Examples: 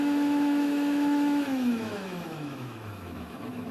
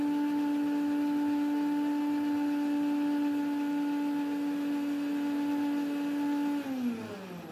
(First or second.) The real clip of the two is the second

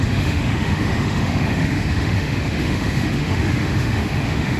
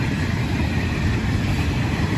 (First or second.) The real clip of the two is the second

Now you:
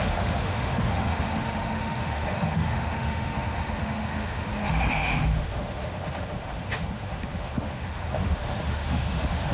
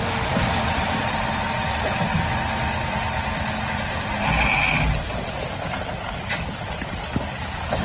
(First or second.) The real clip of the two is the second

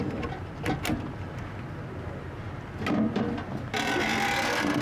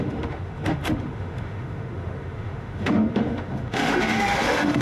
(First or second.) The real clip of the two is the first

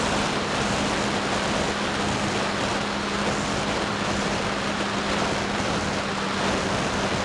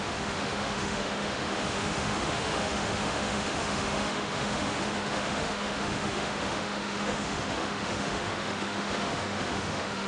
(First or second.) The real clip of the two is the first